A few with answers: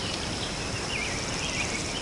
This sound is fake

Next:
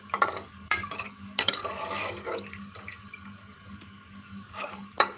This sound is fake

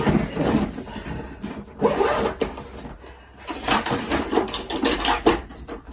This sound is real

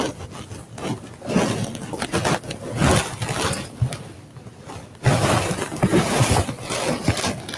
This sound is real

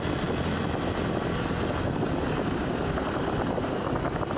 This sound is real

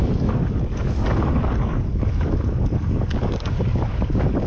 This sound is fake